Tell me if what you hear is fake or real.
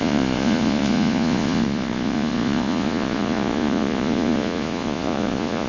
fake